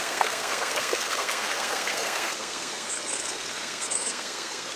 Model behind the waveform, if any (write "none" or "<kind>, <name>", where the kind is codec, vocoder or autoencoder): codec, SNAC